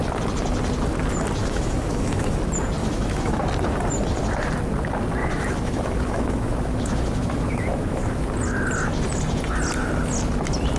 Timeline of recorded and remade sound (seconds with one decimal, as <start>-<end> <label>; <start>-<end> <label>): 0.0-1.4 recorded; 1.4-2.4 remade; 2.4-2.8 recorded; 2.8-3.4 remade; 3.4-5.2 recorded; 5.2-8.3 remade; 8.3-10.8 recorded